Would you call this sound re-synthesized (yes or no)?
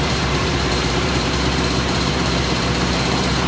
yes